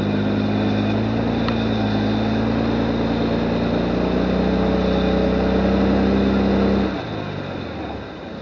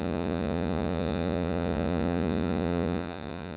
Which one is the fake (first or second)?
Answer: second